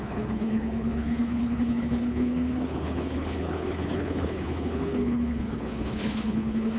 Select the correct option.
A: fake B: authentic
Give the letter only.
A